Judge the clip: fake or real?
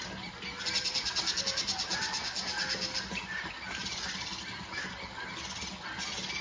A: real